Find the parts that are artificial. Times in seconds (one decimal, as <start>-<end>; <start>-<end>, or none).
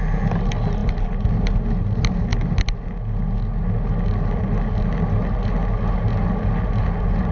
none